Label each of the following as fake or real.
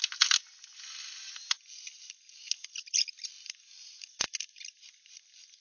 real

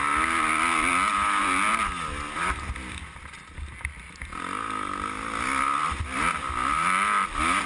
real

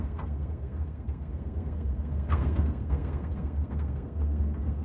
fake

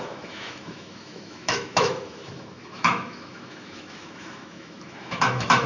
fake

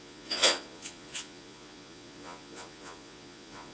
fake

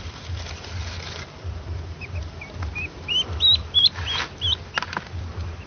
real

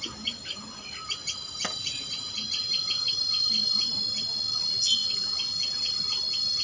real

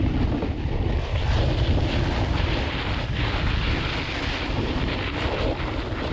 real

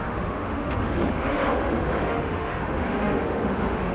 fake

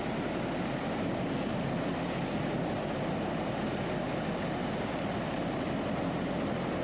real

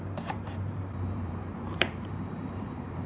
fake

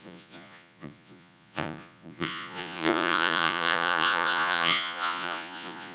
fake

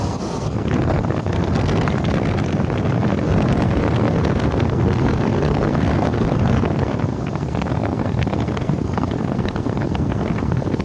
fake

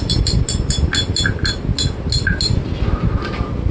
real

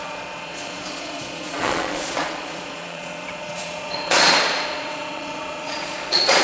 fake